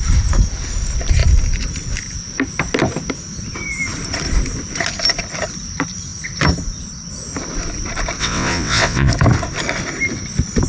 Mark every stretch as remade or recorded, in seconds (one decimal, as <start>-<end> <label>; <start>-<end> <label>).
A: 0.0-8.2 recorded; 8.2-9.1 remade; 9.1-10.7 recorded

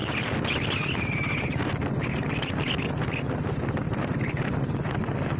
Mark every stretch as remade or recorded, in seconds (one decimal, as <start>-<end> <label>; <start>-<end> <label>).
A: 0.0-5.4 recorded

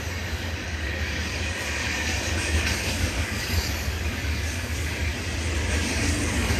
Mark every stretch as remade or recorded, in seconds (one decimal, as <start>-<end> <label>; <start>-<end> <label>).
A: 0.0-5.1 remade; 5.1-5.7 recorded; 5.7-6.6 remade